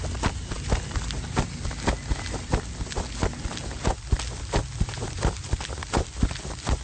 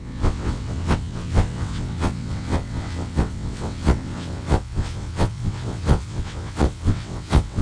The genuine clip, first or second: first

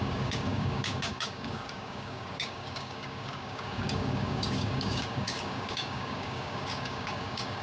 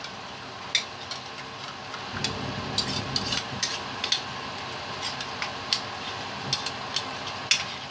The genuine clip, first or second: second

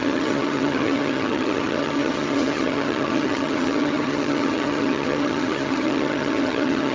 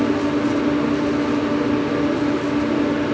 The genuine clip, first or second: second